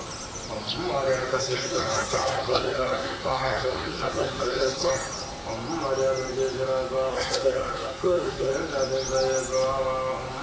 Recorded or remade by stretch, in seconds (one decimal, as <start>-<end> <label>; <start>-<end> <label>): 0.0-1.3 recorded; 1.3-4.9 remade; 4.9-7.1 recorded; 7.1-8.5 remade; 8.5-10.4 recorded